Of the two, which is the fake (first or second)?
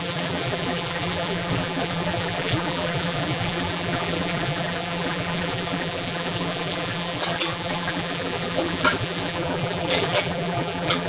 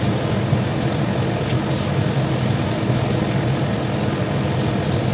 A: first